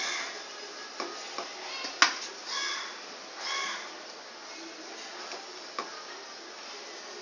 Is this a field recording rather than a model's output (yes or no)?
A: yes